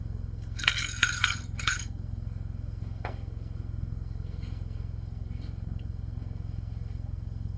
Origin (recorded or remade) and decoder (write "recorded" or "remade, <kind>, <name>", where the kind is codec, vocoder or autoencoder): remade, codec, SNAC